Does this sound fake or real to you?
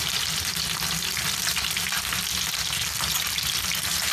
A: real